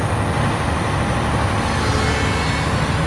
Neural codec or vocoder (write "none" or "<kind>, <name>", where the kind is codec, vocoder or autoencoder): none